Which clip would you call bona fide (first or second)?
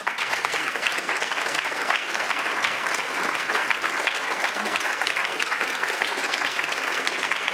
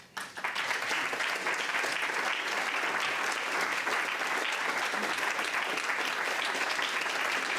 second